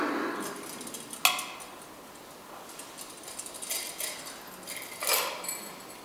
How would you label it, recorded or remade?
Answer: recorded